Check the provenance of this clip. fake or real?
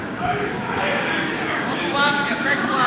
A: fake